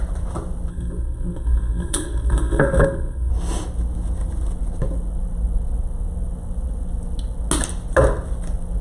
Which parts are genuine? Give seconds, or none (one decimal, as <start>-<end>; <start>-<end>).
0.0-0.7; 3.3-8.8